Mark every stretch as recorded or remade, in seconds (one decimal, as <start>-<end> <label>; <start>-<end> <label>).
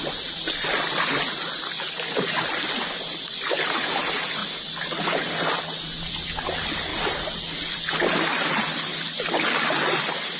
0.0-10.4 recorded